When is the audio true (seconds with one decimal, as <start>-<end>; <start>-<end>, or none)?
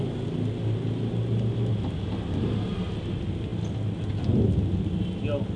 0.0-5.6